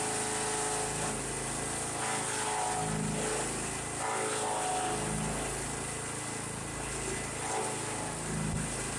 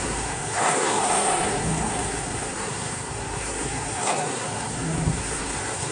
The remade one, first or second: second